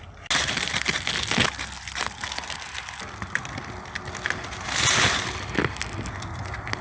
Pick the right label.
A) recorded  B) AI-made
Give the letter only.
A